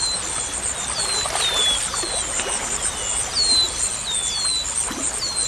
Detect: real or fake real